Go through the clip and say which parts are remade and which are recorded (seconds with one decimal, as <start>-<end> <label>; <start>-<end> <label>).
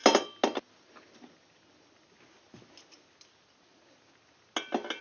0.0-5.0 recorded